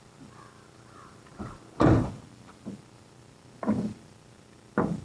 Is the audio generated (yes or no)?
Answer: no